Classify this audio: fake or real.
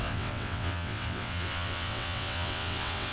fake